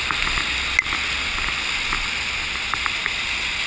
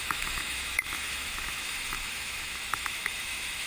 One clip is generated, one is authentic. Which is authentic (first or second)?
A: first